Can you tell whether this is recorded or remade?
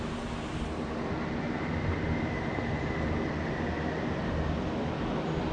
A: recorded